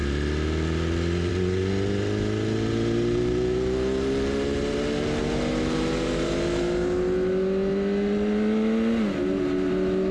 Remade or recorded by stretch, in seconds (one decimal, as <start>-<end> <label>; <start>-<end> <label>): 0.0-10.1 recorded